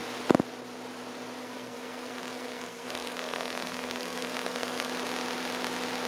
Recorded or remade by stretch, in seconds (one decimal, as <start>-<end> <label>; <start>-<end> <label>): 0.0-1.4 recorded; 1.4-4.9 remade; 4.9-6.1 recorded